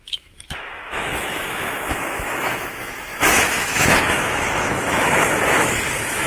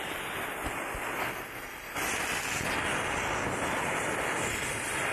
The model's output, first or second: first